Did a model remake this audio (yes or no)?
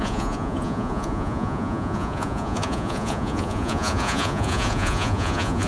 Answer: yes